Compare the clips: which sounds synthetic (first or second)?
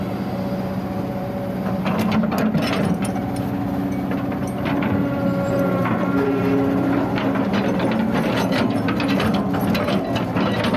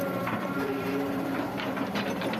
second